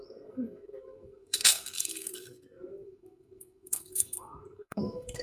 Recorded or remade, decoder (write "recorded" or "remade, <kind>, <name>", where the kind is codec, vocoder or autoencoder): remade, codec, SNAC